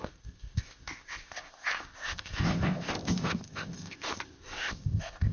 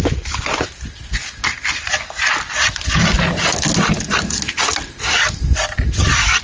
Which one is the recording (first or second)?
second